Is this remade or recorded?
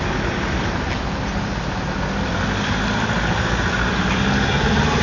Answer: recorded